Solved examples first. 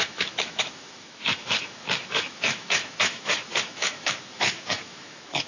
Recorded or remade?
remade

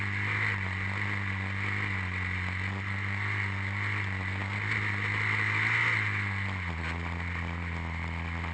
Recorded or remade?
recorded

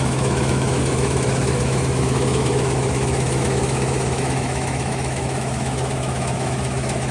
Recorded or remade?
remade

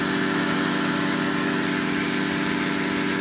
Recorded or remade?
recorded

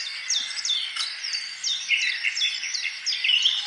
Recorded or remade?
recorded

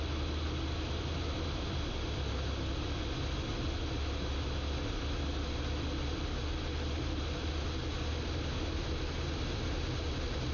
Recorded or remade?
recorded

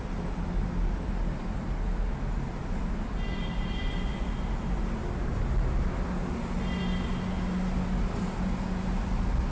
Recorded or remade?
recorded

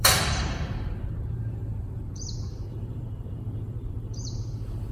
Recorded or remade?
remade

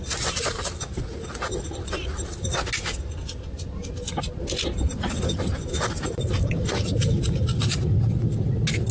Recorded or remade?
recorded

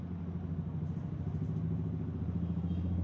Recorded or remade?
recorded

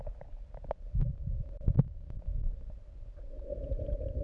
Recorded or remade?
recorded